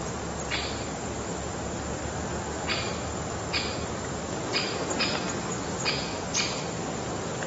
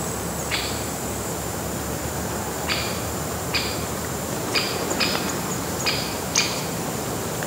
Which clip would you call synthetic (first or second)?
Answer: second